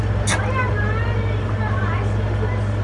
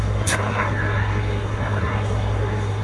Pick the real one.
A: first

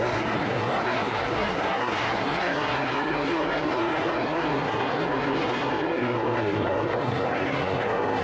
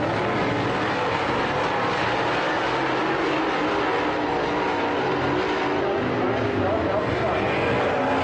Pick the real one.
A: second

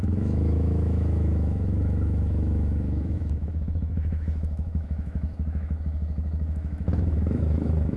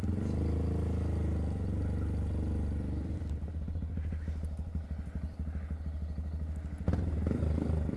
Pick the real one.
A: second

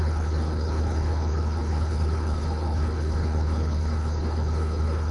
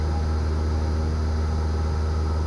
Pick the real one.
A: second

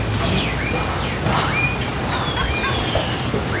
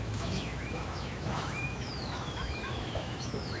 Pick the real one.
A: first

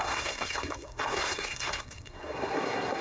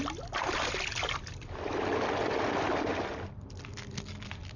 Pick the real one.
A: second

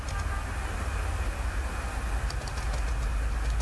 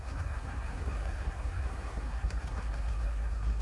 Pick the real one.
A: first